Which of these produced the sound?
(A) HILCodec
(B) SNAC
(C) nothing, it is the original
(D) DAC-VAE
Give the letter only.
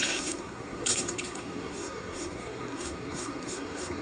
B